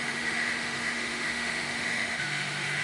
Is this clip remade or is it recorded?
remade